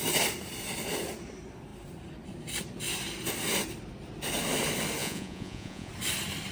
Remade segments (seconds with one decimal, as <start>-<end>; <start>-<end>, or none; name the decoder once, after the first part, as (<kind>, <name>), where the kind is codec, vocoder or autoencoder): 5.0-5.9 (vocoder, Vocos)